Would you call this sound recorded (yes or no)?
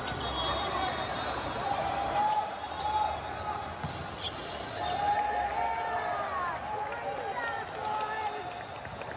yes